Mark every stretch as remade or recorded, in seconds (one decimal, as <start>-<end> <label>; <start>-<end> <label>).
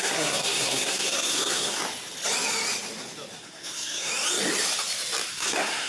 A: 0.0-1.8 remade; 1.8-3.4 recorded; 3.4-4.1 remade; 4.1-5.3 recorded; 5.3-5.9 remade